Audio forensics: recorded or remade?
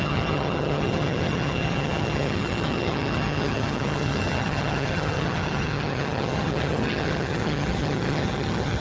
remade